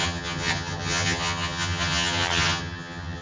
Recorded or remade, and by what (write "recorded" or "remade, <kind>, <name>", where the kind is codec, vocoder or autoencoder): remade, vocoder, HiFi-GAN